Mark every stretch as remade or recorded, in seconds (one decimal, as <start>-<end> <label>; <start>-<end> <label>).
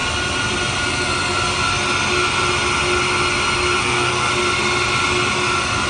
0.0-3.8 recorded; 3.8-4.3 remade; 4.3-5.9 recorded